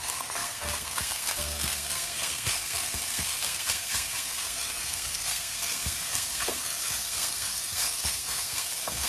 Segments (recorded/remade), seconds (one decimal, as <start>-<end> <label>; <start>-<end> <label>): 0.0-9.1 remade